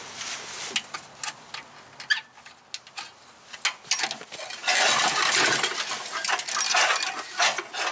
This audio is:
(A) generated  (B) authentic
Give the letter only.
B